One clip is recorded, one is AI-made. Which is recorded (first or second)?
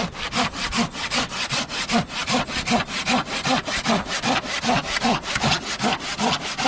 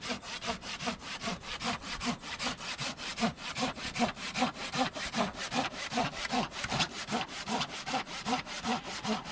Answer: first